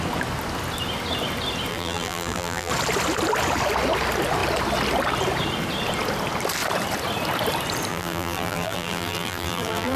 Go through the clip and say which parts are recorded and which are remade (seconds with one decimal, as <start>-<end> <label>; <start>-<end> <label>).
0.0-1.7 recorded; 1.7-2.7 remade; 2.7-7.9 recorded; 7.9-10.0 remade